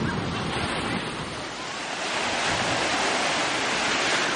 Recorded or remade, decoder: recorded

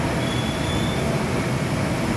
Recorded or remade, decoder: recorded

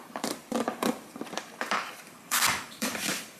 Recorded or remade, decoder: remade, vocoder, BigVGAN v2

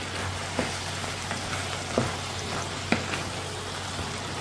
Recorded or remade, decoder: recorded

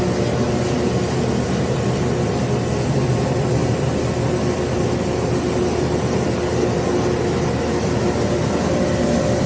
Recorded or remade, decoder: recorded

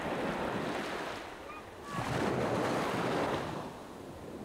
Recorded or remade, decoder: recorded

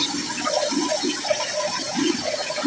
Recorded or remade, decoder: recorded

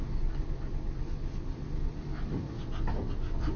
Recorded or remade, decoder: recorded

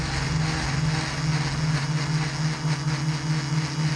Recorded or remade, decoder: recorded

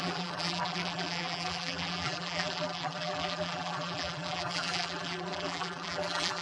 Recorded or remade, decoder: remade, vocoder, BigVGAN v2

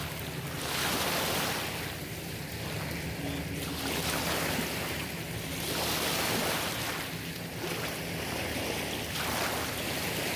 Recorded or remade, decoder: recorded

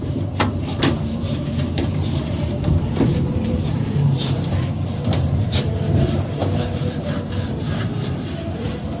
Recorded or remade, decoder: remade, vocoder, BigVGAN v2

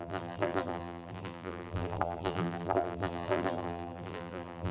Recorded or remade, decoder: remade, vocoder, BigVGAN v2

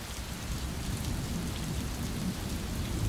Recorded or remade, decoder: remade, vocoder, BigVGAN v2